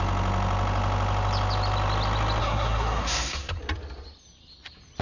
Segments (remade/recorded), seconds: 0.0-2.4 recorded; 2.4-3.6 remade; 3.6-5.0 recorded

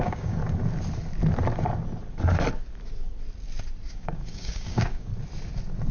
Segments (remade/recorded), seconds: 0.0-0.4 remade; 0.4-3.9 recorded; 3.9-5.1 remade; 5.1-5.9 recorded

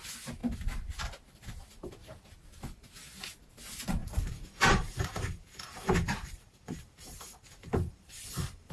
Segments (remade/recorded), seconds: 0.0-4.0 recorded; 4.0-8.7 remade

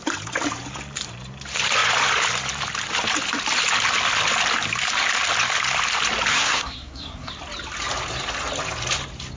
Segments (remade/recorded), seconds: 0.0-6.3 recorded; 6.3-7.3 remade; 7.3-9.4 recorded